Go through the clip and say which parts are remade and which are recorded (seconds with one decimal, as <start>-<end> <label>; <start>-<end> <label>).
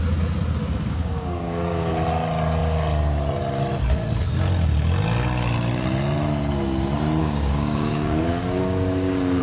0.0-0.6 recorded; 0.6-1.9 remade; 1.9-7.2 recorded; 7.2-9.4 remade